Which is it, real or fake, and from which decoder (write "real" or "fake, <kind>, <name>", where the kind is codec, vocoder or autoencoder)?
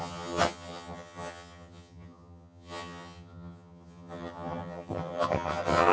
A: fake, vocoder, HiFi-GAN